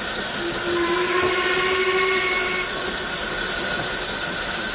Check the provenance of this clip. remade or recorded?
recorded